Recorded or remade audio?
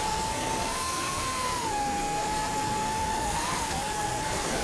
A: remade